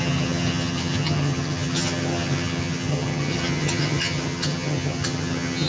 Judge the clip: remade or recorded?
remade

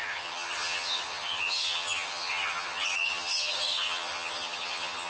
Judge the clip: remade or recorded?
remade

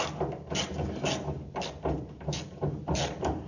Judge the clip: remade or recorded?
recorded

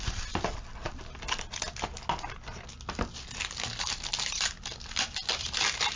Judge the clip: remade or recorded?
recorded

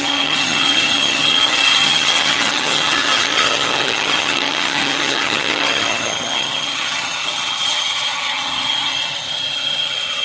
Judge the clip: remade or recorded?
remade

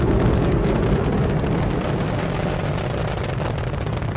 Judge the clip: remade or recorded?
recorded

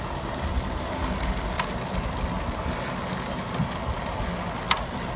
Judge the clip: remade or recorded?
recorded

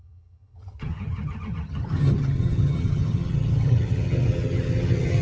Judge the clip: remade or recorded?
remade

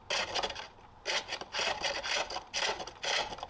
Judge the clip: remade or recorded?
recorded